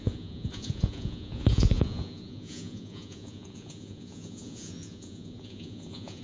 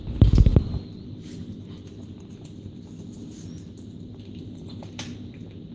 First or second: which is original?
second